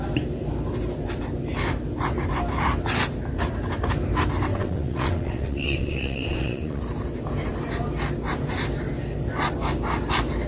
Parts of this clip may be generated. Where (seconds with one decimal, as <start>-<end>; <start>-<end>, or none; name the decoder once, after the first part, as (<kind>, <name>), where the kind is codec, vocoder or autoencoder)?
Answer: 4.5-6.8 (vocoder, WaveNeXt)

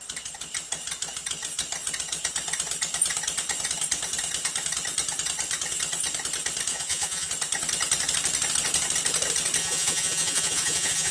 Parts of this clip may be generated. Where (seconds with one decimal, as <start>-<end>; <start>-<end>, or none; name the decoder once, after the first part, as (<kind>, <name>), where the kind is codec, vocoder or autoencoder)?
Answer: 6.7-7.3 (vocoder, Vocos); 9.6-11.1

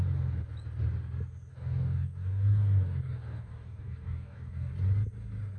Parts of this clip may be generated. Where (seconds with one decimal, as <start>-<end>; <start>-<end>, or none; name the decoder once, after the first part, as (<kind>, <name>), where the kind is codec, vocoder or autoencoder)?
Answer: 1.5-4.7 (codec, DAC)